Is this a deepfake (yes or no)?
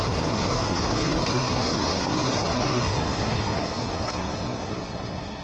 yes